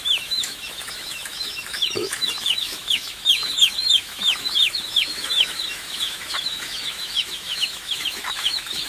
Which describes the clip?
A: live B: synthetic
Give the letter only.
B